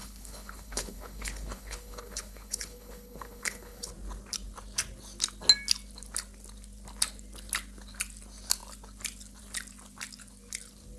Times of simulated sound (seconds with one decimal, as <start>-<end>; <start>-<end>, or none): 0.0-3.9